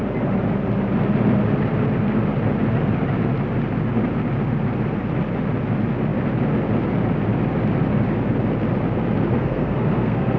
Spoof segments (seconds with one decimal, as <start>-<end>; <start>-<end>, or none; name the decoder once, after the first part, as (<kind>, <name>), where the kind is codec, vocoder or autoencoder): 9.3-10.4 (codec, SNAC)